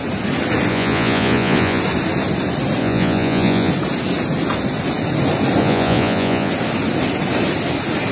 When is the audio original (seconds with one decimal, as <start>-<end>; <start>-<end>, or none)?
0.0-0.7; 1.8-2.8; 3.7-5.6; 6.5-8.1